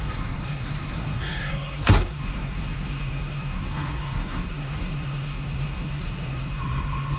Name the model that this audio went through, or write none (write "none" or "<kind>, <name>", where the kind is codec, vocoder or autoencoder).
codec, SNAC